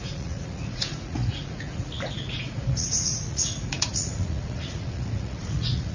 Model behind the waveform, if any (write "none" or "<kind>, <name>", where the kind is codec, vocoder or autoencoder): vocoder, Vocos